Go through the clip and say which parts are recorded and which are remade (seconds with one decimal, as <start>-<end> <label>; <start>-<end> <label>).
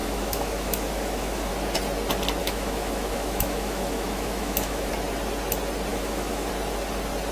0.0-1.5 remade; 1.5-2.4 recorded; 2.4-4.9 remade; 4.9-5.9 recorded; 5.9-6.5 remade; 6.5-7.3 recorded